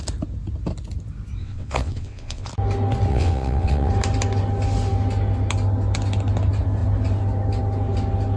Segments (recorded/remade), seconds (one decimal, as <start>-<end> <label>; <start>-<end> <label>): 0.0-1.4 recorded; 1.4-2.5 remade; 2.5-3.1 recorded; 3.1-3.9 remade; 3.9-8.4 recorded